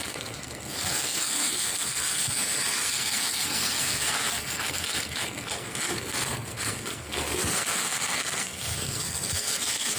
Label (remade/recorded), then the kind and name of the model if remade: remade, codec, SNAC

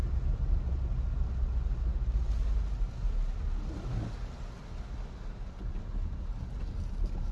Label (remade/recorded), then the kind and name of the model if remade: recorded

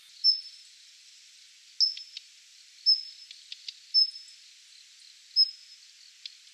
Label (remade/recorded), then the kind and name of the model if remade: recorded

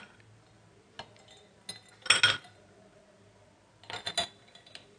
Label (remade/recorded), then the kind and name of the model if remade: recorded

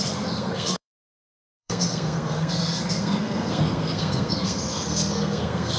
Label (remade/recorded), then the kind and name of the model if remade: remade, codec, SNAC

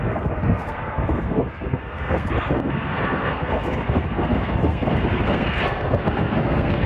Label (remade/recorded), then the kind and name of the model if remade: remade, codec, SNAC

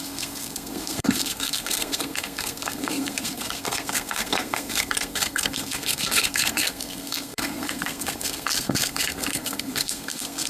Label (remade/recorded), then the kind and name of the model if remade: remade, codec, SNAC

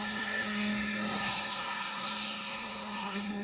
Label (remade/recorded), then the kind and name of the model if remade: remade, codec, SNAC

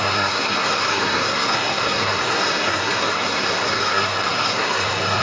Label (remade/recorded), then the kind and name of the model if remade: remade, codec, SNAC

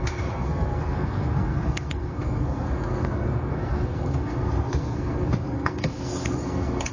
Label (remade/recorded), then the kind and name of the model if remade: remade, codec, SNAC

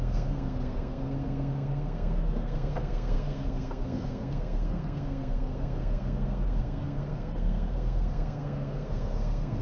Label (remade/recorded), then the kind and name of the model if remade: remade, codec, SNAC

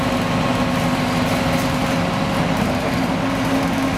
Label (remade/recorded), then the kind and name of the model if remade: recorded